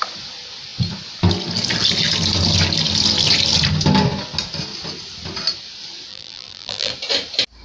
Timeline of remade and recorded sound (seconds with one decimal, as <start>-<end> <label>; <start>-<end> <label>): 0.0-6.1 recorded; 6.1-6.9 remade; 6.9-7.6 recorded